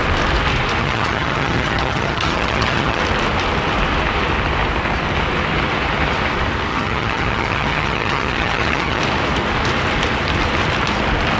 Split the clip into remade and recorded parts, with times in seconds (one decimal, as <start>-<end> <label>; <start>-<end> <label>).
0.0-0.8 recorded; 0.8-3.0 remade; 3.0-6.7 recorded; 6.7-9.0 remade; 9.0-11.4 recorded